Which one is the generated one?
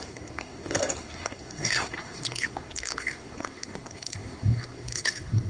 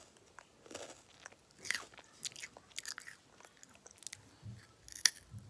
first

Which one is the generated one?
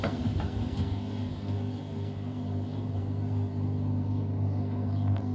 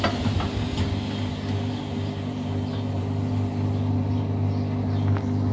first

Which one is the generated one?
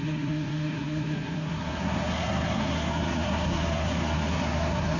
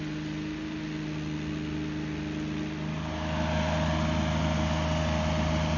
first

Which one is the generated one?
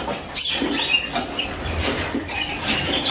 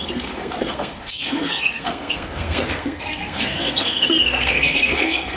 second